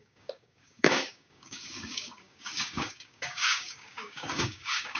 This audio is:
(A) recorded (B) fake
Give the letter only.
B